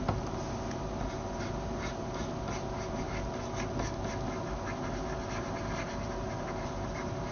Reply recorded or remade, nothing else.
recorded